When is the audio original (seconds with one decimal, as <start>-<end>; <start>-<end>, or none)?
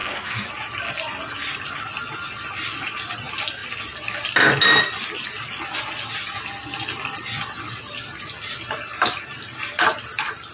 0.5-10.5